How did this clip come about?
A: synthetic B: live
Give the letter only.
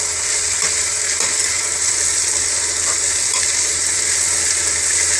B